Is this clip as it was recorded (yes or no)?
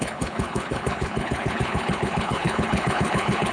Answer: no